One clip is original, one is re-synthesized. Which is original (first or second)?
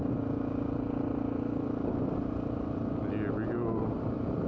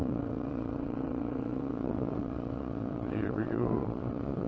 first